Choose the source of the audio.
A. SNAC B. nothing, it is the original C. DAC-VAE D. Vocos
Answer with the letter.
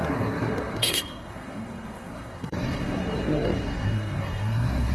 A